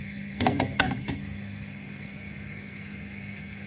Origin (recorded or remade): remade